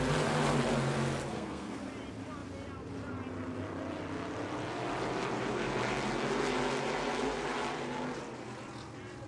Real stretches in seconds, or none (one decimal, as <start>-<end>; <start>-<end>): 0.0-1.3; 1.8-9.3